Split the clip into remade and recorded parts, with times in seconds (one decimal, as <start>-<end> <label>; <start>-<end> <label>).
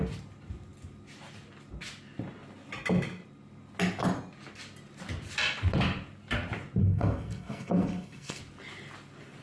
0.0-6.8 recorded; 6.8-8.4 remade; 8.4-9.4 recorded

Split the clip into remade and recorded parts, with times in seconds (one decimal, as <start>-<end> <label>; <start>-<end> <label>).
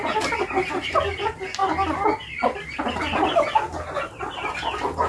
0.0-5.1 recorded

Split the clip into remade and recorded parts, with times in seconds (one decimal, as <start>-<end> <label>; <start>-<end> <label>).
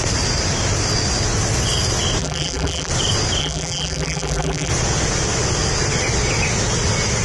0.0-2.2 recorded; 2.2-2.9 remade; 2.9-3.4 recorded; 3.4-4.7 remade; 4.7-7.2 recorded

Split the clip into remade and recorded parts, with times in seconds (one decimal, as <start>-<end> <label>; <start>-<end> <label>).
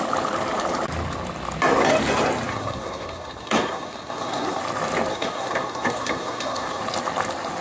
0.0-2.5 recorded; 2.5-4.6 remade; 4.6-5.1 recorded; 5.1-6.8 remade; 6.8-7.6 recorded